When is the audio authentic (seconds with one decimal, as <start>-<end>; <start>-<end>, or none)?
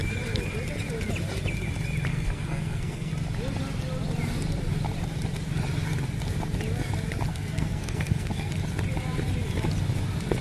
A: 0.0-2.1; 3.1-7.3; 8.5-10.4